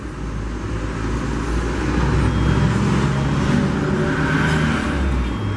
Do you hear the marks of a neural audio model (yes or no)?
no